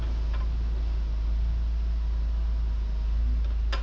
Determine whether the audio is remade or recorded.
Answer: recorded